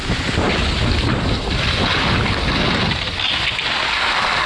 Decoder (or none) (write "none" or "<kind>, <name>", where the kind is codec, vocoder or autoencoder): none